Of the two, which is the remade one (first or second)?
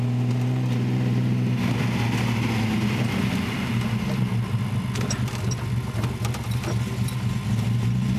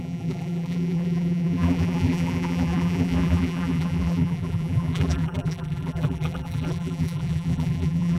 second